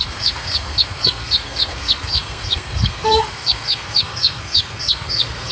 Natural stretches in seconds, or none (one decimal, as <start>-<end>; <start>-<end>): none